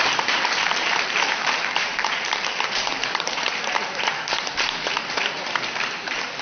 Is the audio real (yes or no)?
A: no